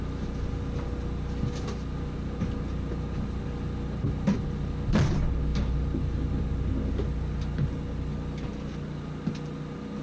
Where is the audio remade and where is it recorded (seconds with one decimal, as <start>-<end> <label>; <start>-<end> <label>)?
0.0-10.0 recorded